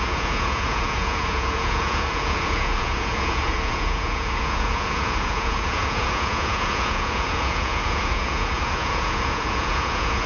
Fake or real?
fake